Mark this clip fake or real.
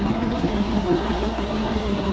fake